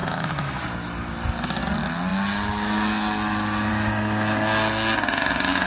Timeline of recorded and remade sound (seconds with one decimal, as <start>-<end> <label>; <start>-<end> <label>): 0.0-0.6 remade; 0.6-5.7 recorded